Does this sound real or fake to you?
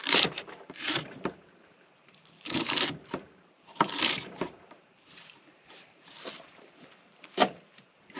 fake